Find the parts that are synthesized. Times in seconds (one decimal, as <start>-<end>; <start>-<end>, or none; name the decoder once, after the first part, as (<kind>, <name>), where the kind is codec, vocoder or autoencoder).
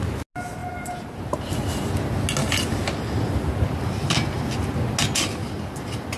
0.6-1.4 (vocoder, BigVGAN v2)